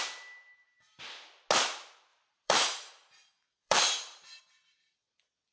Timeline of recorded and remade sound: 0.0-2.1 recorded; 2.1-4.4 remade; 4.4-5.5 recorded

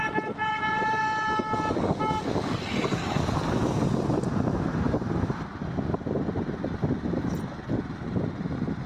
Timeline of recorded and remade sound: 0.0-0.4 recorded; 0.4-1.0 remade; 1.0-4.7 recorded; 4.7-7.6 remade; 7.6-8.9 recorded

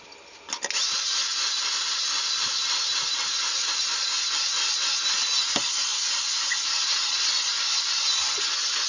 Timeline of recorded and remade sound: 0.0-5.9 recorded; 5.9-8.9 remade